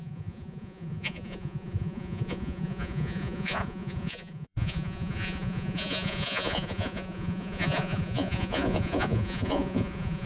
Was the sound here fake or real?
fake